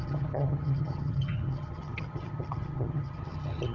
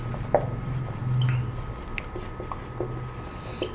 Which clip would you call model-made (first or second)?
first